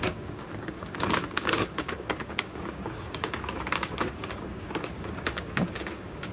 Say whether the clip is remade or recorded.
remade